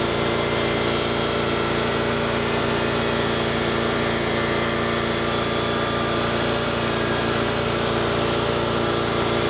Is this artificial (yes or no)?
no